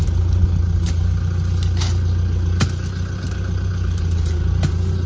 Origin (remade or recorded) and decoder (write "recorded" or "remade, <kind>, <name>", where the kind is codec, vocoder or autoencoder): recorded